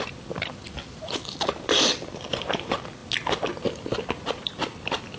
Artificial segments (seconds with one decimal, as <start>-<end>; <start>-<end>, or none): 0.0-3.0; 4.0-5.2